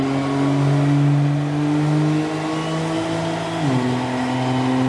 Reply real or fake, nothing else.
real